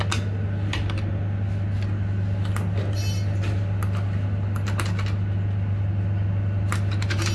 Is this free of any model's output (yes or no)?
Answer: yes